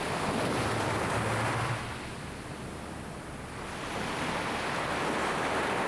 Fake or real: real